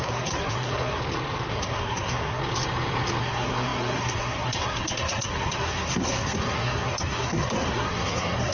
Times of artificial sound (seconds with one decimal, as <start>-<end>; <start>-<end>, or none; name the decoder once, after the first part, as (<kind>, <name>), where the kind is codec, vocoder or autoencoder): 0.0-1.0 (codec, SNAC); 1.5-2.4; 3.2-8.5

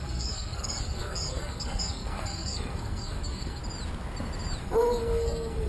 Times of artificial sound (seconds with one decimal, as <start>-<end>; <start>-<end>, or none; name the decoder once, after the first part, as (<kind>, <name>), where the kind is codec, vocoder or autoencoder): 0.0-3.6 (codec, SNAC); 4.6-5.7

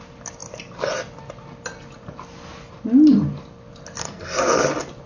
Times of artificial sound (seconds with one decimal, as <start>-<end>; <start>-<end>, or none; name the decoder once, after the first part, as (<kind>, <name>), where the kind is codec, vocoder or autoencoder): 4.0-4.6 (codec, SNAC)

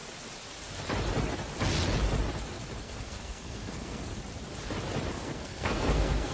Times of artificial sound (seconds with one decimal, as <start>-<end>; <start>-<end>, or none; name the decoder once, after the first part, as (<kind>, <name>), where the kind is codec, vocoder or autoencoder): 2.8-4.1 (codec, SNAC); 5.1-6.3

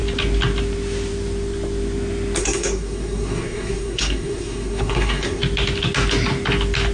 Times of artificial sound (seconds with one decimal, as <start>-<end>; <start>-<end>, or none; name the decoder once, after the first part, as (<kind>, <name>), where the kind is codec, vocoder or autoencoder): 2.4-5.4 (codec, SNAC)

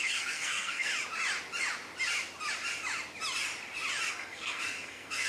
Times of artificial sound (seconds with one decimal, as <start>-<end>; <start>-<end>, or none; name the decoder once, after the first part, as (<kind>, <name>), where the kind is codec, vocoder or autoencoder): 0.0-0.9 (codec, SNAC); 4.1-5.3

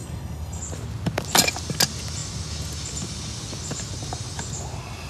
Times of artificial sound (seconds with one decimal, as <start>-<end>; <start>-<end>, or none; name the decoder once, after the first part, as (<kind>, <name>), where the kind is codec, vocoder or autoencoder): 0.0-0.6 (codec, SNAC)

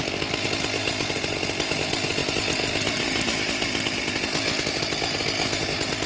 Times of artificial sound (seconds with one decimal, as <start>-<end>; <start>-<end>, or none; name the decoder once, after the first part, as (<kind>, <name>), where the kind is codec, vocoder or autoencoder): none